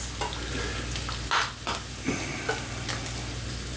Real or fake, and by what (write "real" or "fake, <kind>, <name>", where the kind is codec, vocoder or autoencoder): real